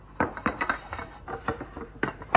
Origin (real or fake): fake